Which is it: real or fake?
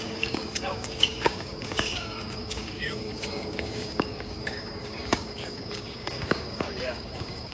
fake